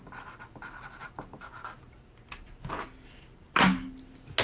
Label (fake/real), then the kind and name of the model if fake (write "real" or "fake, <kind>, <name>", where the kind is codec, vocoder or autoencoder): real